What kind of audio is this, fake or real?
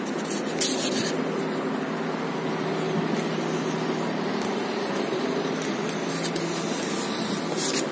real